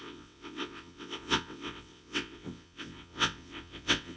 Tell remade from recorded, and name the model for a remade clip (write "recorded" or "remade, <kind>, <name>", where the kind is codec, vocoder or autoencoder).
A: remade, vocoder, WaveNeXt